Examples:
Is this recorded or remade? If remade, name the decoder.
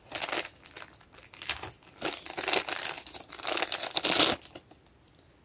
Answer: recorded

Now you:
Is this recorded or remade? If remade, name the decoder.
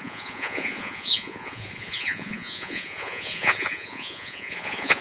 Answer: remade, vocoder, Vocos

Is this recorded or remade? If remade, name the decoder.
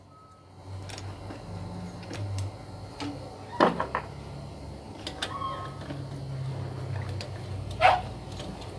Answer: recorded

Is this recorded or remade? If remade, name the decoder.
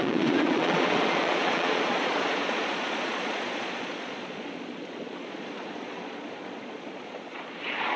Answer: remade, vocoder, Vocos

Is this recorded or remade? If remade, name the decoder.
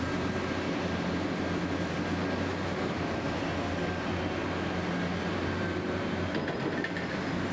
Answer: recorded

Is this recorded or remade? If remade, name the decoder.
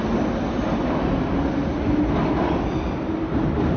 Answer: recorded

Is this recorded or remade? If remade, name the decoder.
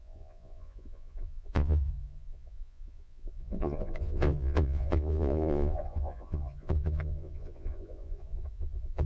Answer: remade, vocoder, Vocos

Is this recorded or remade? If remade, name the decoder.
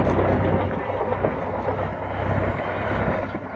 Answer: recorded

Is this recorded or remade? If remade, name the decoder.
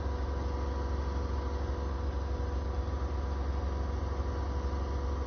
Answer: recorded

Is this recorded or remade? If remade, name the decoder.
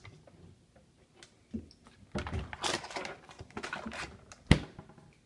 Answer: recorded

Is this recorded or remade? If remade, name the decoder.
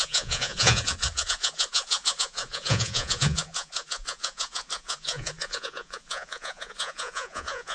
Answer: remade, vocoder, Vocos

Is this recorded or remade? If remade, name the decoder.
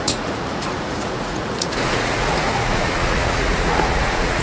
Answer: remade, vocoder, Vocos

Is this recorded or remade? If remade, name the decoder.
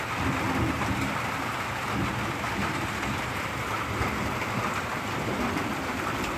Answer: recorded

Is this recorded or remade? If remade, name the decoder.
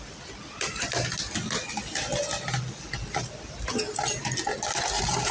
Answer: recorded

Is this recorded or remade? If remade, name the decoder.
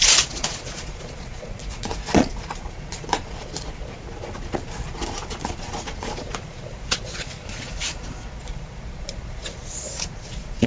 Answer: remade, vocoder, Vocos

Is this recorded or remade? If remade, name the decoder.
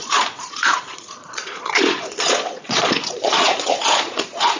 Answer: remade, vocoder, Vocos